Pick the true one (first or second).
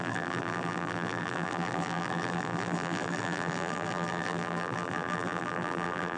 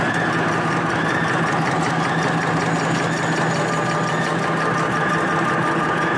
second